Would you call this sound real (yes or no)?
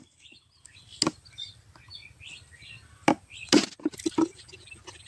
yes